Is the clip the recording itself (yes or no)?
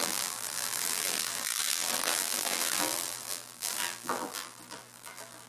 no